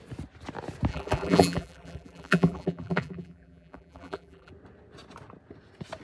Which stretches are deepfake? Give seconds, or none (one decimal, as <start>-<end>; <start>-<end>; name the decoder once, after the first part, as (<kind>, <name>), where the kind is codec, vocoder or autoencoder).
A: 0.9-4.5 (vocoder, BigVGAN v2)